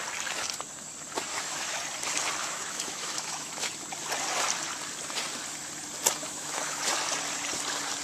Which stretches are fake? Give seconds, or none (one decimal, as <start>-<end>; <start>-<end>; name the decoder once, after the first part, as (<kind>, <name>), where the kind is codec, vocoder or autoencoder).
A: 1.3-1.8 (autoencoder, DAC-VAE); 2.4-3.7; 6.2-6.8